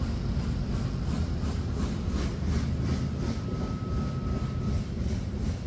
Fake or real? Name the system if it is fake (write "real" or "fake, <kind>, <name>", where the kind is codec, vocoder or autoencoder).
real